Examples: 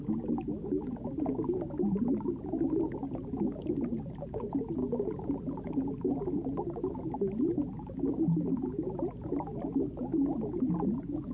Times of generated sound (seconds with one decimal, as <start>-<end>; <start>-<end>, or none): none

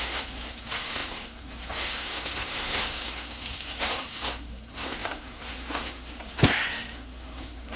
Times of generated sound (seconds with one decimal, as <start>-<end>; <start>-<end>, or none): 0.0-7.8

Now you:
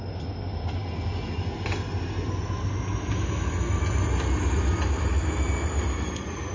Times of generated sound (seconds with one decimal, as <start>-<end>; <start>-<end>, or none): 5.1-6.5

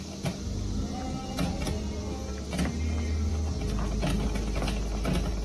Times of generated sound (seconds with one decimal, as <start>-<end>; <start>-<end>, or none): none

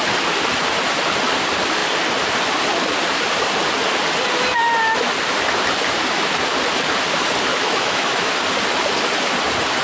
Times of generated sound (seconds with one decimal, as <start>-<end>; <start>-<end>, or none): 7.5-8.3

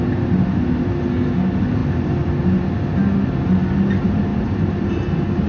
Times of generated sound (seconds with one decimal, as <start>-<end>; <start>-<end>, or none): 4.3-5.0

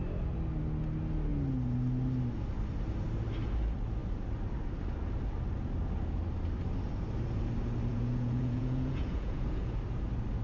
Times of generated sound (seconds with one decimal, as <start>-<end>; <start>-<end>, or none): 7.9-9.8

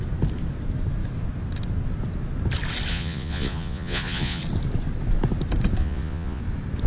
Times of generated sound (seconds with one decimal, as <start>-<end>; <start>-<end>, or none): 2.9-4.4; 5.8-6.4